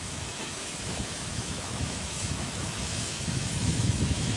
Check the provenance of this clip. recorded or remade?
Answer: remade